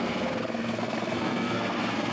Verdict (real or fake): fake